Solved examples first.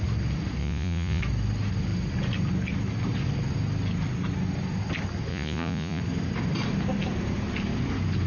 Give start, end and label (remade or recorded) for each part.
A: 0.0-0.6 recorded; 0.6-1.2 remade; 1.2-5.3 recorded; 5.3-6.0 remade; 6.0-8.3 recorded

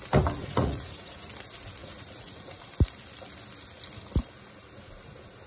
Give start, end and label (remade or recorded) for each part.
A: 0.0-0.4 recorded; 0.4-1.3 remade; 1.3-1.8 recorded; 1.8-2.6 remade; 2.6-5.5 recorded

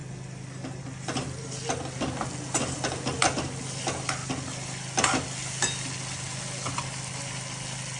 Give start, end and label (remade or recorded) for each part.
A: 0.0-8.0 recorded

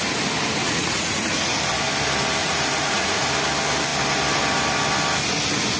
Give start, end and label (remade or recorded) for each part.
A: 0.0-0.6 recorded; 0.6-1.6 remade; 1.6-2.4 recorded; 2.4-3.3 remade; 3.3-5.8 recorded